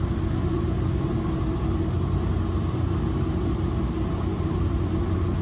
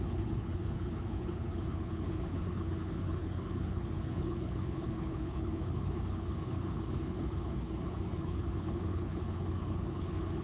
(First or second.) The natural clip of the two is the first